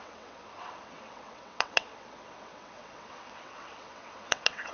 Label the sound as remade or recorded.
remade